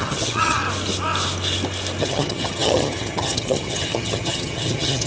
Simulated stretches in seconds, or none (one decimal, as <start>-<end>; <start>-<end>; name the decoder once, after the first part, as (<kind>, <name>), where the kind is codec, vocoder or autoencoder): 0.0-0.6 (vocoder, HiFi-GAN); 2.0-5.1